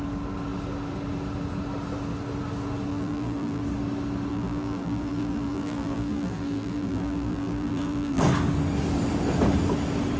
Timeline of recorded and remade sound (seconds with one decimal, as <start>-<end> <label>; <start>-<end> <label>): 0.0-2.9 recorded; 2.9-3.6 remade; 3.6-4.3 recorded; 4.3-8.2 remade; 8.2-10.2 recorded